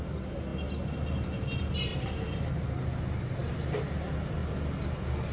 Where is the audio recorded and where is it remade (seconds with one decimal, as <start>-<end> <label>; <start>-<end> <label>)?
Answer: 0.0-1.9 recorded; 1.9-2.5 remade; 2.5-3.4 recorded; 3.4-3.9 remade; 3.9-5.3 recorded